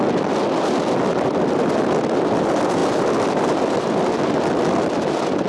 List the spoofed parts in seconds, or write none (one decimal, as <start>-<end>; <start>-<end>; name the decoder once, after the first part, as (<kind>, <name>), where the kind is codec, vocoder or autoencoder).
none